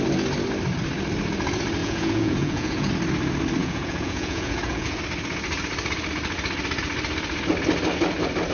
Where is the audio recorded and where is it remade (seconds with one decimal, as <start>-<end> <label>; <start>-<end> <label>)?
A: 0.0-1.8 recorded; 1.8-2.9 remade; 2.9-3.6 recorded; 3.6-5.0 remade; 5.0-8.5 recorded